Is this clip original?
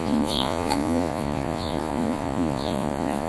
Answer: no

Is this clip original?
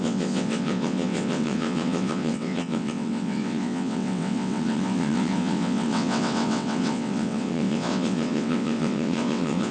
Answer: no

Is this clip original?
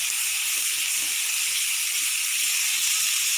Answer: yes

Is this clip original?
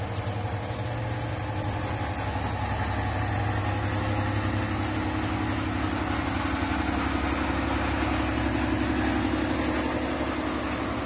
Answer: yes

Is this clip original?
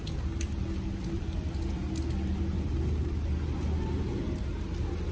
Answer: yes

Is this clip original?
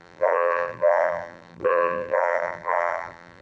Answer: no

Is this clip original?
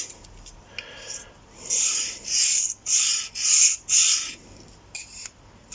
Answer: yes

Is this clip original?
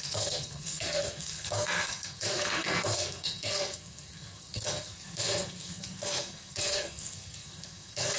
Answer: no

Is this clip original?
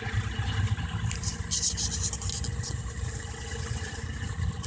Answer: yes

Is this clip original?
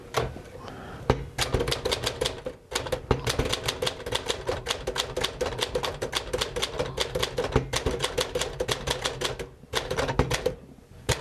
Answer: yes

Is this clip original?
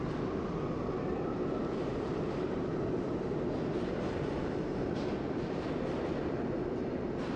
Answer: yes